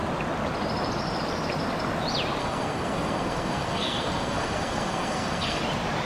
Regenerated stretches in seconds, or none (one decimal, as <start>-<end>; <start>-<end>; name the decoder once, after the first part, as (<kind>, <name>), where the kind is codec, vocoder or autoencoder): 2.4-5.6 (codec, SNAC)